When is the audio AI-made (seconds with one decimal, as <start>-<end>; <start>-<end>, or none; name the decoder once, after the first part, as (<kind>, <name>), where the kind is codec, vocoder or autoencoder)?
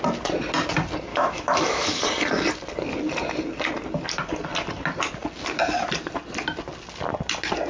1.1-2.0 (autoencoder, DAC-VAE)